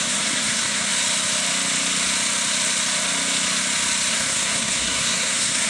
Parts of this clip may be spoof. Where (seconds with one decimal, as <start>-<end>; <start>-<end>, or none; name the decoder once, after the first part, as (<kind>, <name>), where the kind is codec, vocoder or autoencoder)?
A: 0.0-0.9 (codec, SNAC); 4.1-5.7